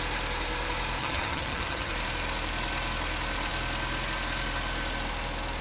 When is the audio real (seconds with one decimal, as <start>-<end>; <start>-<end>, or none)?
0.0-1.0; 1.9-5.6